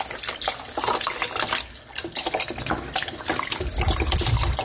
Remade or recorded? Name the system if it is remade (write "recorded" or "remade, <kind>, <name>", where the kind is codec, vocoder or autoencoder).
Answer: recorded